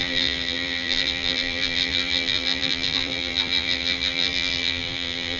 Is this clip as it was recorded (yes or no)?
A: no